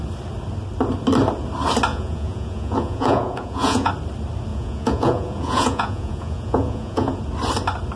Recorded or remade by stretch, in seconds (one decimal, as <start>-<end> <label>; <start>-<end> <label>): 0.0-1.9 recorded; 1.9-3.9 remade; 3.9-4.5 recorded; 4.5-7.2 remade; 7.2-8.0 recorded

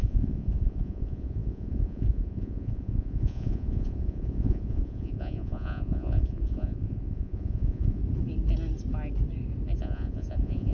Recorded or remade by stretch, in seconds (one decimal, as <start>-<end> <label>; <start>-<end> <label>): 0.0-8.0 remade; 8.0-9.8 recorded; 9.8-10.7 remade

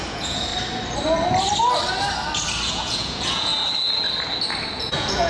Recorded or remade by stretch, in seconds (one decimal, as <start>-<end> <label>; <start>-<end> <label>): 0.0-0.5 remade; 0.5-2.7 recorded; 2.7-3.5 remade; 3.5-4.7 recorded; 4.7-5.3 remade

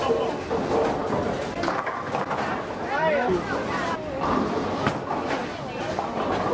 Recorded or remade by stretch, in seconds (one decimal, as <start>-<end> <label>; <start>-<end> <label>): 0.0-6.5 recorded

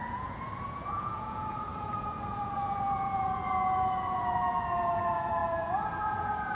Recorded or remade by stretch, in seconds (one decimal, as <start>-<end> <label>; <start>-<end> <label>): 0.0-6.5 remade